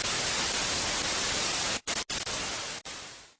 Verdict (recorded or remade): recorded